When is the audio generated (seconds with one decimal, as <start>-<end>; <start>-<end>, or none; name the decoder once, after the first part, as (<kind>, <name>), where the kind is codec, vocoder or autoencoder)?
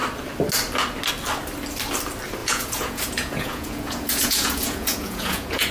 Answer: 2.4-5.7 (vocoder, Vocos)